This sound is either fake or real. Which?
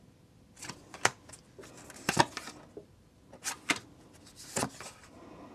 real